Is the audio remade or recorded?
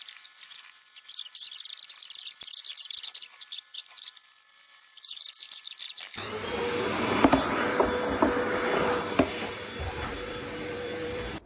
remade